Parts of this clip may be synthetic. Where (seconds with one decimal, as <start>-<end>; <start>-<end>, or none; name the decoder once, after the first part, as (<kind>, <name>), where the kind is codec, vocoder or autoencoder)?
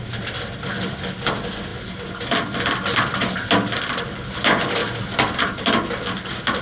none